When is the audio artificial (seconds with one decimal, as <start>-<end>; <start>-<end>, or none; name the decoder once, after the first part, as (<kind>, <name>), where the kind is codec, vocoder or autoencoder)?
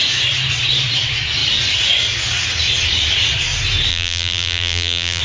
3.9-5.2 (vocoder, BigVGAN v2)